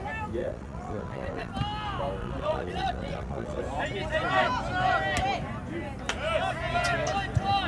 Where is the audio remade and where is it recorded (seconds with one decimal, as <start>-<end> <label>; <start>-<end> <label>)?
0.0-0.4 recorded; 0.4-1.5 remade; 1.5-2.2 recorded; 2.2-3.6 remade; 3.6-7.7 recorded